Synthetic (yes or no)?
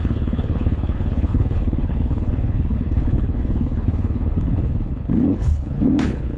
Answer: yes